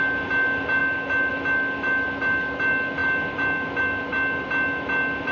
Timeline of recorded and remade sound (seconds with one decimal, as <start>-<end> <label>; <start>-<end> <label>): 0.0-5.3 recorded

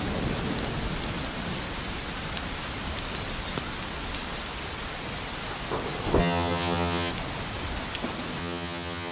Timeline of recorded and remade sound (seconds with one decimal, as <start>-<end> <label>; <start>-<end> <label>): 0.0-6.2 recorded; 6.2-7.1 remade; 7.1-8.4 recorded; 8.4-9.1 remade

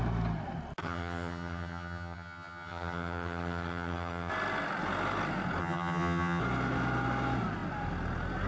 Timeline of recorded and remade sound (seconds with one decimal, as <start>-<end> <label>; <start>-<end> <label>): 0.0-0.8 recorded; 0.8-4.3 remade; 4.3-5.6 recorded; 5.6-6.4 remade; 6.4-8.5 recorded

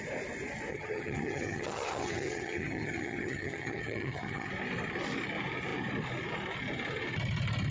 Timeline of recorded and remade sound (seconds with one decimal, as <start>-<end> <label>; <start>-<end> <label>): 0.0-0.7 recorded; 0.7-4.5 remade; 4.5-7.7 recorded